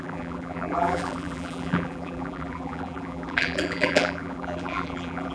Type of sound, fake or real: fake